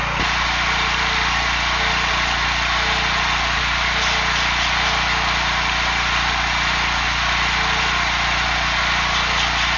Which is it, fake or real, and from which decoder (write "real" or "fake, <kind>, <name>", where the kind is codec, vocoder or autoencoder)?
real